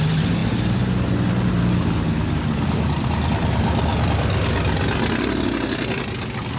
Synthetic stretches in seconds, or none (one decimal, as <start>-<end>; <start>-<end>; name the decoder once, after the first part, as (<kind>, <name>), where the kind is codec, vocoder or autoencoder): none